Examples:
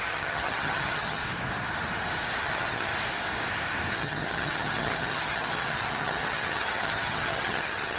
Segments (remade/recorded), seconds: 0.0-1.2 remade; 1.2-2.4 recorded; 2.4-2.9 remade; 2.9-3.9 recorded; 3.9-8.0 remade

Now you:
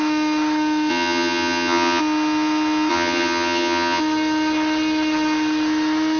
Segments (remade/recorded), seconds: 0.0-0.9 recorded; 0.9-2.0 remade; 2.0-2.9 recorded; 2.9-4.0 remade; 4.0-6.2 recorded